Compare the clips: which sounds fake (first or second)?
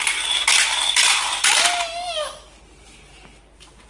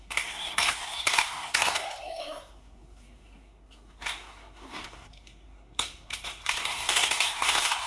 second